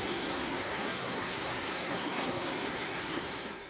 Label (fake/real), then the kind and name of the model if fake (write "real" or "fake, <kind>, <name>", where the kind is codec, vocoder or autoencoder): fake, codec, SNAC